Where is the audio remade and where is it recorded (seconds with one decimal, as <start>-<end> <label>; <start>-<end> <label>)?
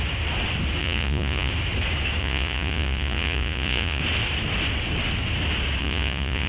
0.0-0.8 recorded; 0.8-1.5 remade; 1.5-2.2 recorded; 2.2-4.0 remade; 4.0-5.8 recorded; 5.8-6.5 remade